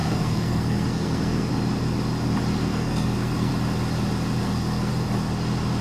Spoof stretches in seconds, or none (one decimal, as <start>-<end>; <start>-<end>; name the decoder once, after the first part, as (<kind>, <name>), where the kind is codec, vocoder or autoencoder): 0.0-1.5 (codec, SNAC); 2.7-3.5; 4.4-4.9